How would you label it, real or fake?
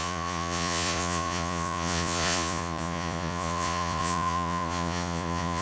fake